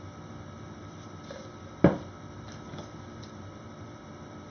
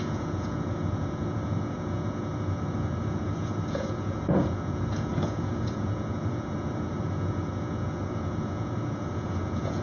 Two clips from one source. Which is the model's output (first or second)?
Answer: second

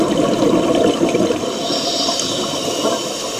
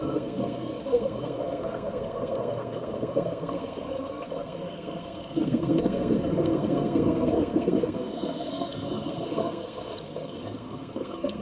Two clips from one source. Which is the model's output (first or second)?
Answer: second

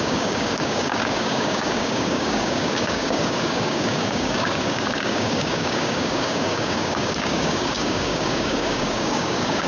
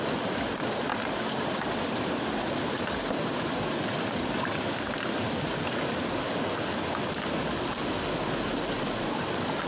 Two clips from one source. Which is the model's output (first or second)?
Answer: first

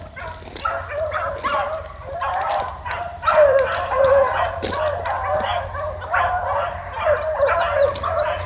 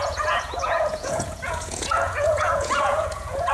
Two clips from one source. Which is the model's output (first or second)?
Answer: second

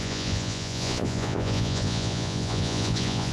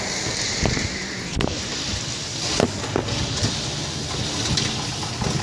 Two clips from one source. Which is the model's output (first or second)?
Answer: first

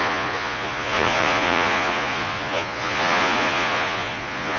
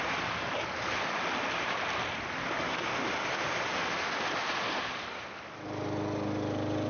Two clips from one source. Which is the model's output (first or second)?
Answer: first